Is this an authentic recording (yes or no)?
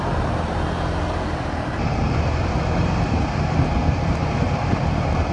no